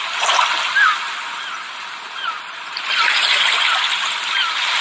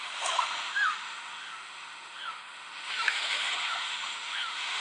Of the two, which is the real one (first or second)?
first